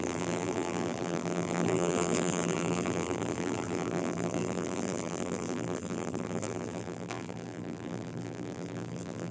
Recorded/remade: remade